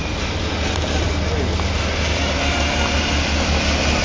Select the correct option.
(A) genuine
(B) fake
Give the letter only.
A